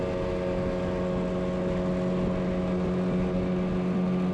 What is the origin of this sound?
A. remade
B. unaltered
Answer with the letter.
B